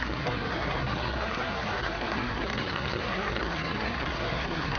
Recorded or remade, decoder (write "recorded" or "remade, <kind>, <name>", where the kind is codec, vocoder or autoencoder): remade, codec, SNAC